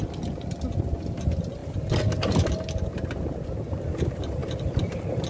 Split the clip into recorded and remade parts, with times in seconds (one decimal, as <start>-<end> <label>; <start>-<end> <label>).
0.0-5.3 recorded